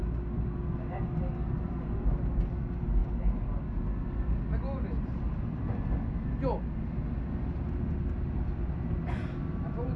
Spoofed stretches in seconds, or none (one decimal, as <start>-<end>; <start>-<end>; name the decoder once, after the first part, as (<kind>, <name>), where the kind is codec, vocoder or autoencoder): none